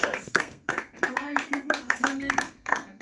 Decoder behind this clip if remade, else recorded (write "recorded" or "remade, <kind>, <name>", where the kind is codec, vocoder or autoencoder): remade, codec, SNAC